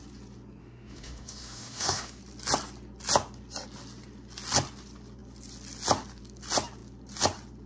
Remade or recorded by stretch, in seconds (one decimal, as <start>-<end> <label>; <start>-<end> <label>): 0.0-0.6 recorded; 0.6-2.2 remade; 2.2-7.7 recorded